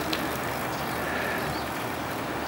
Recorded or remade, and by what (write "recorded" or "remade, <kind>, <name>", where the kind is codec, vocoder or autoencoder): recorded